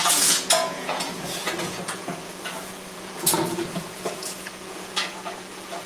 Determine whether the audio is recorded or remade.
remade